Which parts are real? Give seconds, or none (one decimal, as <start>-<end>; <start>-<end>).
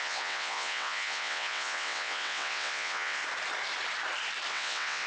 3.2-4.5